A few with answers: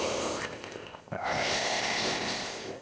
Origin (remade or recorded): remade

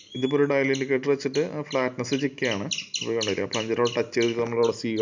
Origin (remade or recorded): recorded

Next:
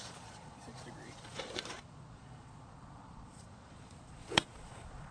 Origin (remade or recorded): remade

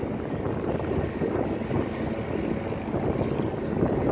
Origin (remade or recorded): recorded